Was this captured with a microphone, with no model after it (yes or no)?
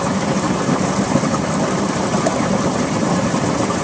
no